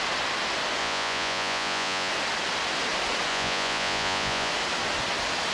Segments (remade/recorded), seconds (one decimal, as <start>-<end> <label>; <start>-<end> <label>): 0.0-0.8 recorded; 0.8-2.1 remade; 2.1-3.3 recorded; 3.3-4.5 remade; 4.5-5.5 recorded